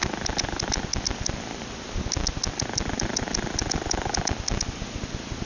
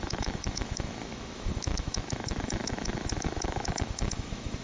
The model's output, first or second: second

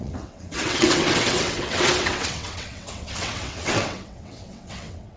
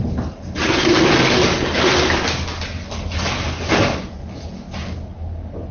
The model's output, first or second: first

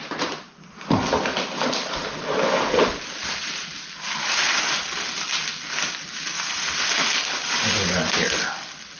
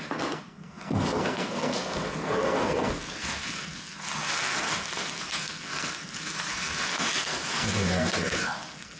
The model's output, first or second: second